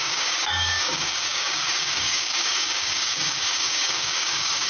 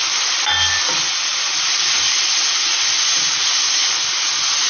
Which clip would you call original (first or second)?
second